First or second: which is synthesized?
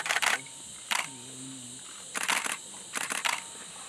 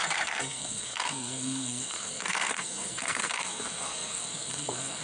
second